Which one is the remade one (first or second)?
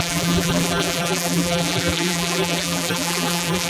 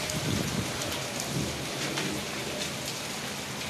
first